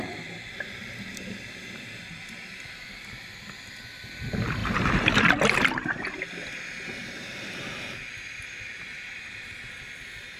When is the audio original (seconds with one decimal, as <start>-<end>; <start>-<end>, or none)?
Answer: 0.0-7.0; 9.6-10.4